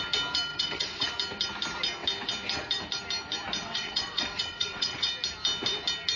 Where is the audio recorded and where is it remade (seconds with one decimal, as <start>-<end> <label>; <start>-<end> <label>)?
0.0-0.5 recorded; 0.5-1.1 remade; 1.1-3.6 recorded; 3.6-5.1 remade; 5.1-6.2 recorded

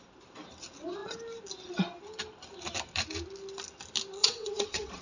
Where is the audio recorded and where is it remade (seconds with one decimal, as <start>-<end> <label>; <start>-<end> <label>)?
0.0-4.2 recorded; 4.2-5.0 remade

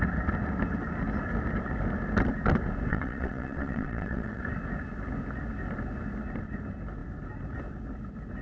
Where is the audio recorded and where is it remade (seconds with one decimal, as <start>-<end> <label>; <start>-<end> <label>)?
0.0-2.9 recorded; 2.9-4.4 remade; 4.4-8.4 recorded